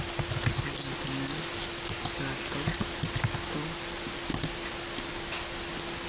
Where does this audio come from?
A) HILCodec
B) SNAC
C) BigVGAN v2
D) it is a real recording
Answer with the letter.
D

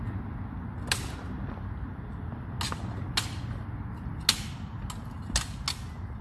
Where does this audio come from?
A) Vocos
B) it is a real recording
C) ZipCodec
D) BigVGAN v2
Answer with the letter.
B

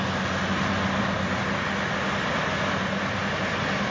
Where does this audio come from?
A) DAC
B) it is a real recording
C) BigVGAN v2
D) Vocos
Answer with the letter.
B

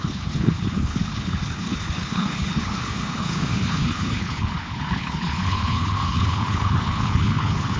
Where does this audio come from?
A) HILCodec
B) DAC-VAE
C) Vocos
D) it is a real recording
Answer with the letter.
A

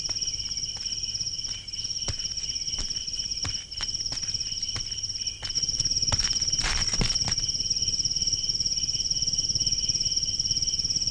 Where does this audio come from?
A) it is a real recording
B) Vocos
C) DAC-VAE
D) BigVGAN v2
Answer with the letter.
A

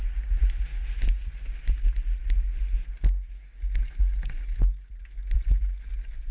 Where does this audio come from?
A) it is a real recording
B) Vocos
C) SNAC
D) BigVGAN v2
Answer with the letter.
A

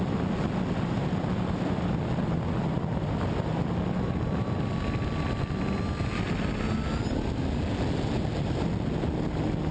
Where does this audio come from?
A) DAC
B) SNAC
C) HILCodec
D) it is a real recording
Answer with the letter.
D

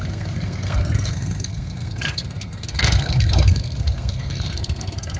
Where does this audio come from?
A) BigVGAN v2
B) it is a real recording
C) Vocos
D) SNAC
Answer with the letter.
D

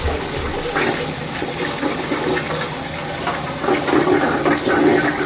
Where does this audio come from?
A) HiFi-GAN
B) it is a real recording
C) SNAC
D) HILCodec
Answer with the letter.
B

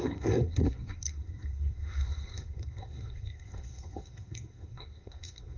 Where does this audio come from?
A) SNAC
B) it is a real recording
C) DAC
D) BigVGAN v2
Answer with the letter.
A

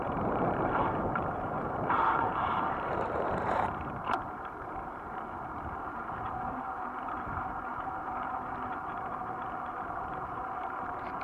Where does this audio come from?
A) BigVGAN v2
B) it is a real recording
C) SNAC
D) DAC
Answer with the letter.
A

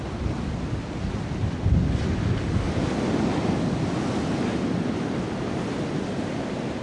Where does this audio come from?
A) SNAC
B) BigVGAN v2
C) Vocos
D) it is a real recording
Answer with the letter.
D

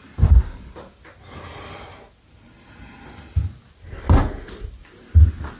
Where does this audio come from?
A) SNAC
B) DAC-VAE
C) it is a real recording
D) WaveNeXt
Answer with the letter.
C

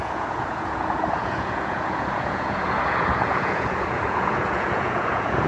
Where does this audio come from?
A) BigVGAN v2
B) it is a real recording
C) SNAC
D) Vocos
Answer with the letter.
D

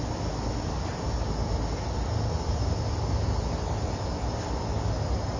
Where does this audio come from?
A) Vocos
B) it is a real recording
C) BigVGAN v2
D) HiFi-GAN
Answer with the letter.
B